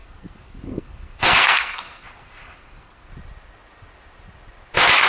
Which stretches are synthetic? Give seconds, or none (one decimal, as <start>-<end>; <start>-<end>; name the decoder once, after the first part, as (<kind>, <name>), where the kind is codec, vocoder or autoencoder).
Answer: 0.0-3.1 (codec, SNAC)